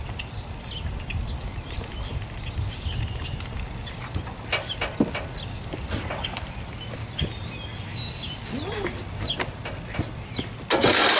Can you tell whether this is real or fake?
real